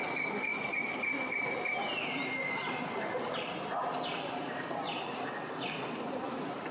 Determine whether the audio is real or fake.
real